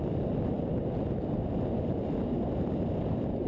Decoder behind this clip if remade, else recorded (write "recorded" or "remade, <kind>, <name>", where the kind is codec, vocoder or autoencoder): recorded